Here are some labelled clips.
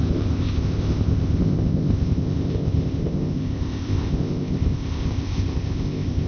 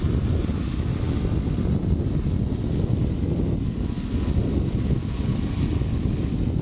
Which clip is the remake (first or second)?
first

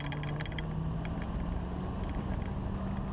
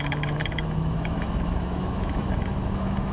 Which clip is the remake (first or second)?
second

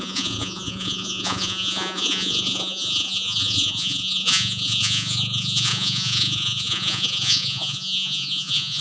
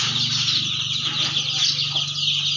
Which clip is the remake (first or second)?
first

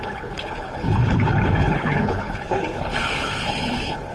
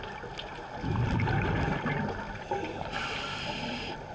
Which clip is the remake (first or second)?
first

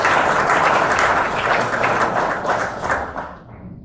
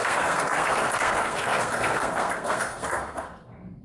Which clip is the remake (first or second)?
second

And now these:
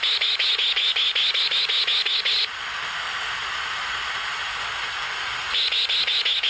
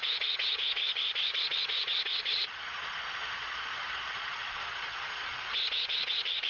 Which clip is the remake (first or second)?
second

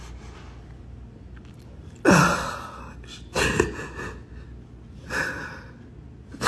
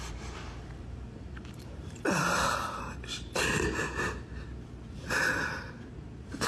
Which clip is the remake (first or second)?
second